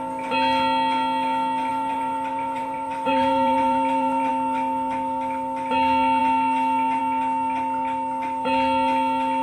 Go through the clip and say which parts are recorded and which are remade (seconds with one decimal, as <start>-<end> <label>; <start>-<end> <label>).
0.0-1.7 recorded; 1.7-4.3 remade; 4.3-9.4 recorded